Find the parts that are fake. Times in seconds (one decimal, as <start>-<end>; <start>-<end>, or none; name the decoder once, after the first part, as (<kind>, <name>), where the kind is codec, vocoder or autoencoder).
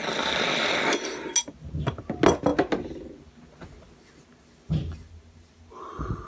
none